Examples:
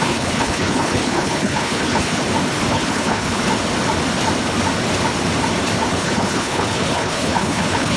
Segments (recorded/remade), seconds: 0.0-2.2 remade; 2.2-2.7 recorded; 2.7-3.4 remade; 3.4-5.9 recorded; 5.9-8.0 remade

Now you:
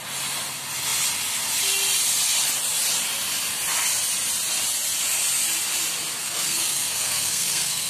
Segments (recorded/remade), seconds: 0.0-6.2 recorded; 6.2-7.9 remade

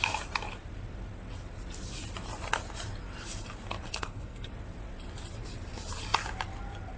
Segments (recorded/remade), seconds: 0.0-3.9 recorded; 3.9-4.5 remade; 4.5-7.0 recorded

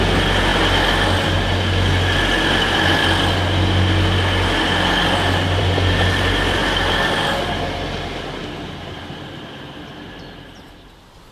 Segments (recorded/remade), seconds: 0.0-11.3 recorded

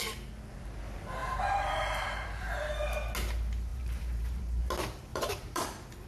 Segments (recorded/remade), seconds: 0.0-1.2 recorded; 1.2-2.7 remade; 2.7-3.7 recorded; 3.7-4.6 remade; 4.6-5.1 recorded; 5.1-5.6 remade; 5.6-6.1 recorded

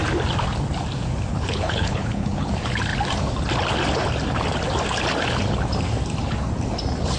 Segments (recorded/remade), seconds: 0.0-1.3 recorded; 1.3-2.5 remade; 2.5-7.2 recorded

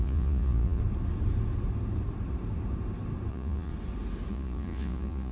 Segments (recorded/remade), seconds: 0.0-0.8 remade; 0.8-3.3 recorded; 3.3-3.7 remade; 3.7-4.3 recorded; 4.3-5.3 remade

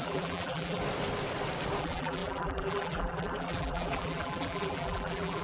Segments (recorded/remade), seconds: 0.0-0.8 remade; 0.8-1.8 recorded; 1.8-5.4 remade